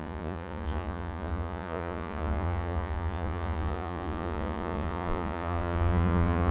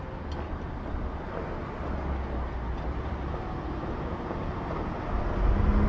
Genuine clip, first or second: second